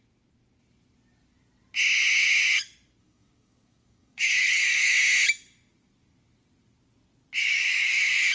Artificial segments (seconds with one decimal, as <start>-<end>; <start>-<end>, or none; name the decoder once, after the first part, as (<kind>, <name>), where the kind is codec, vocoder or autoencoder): 3.0-4.9 (codec, DAC); 7.4-8.3